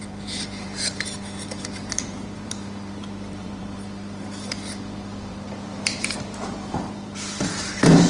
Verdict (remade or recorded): remade